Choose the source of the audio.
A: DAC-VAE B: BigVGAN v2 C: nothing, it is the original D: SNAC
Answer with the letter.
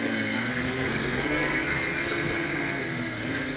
D